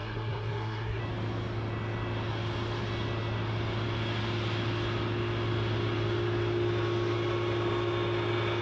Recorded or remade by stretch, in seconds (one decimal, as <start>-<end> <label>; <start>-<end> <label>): 0.0-1.0 remade; 1.0-8.6 recorded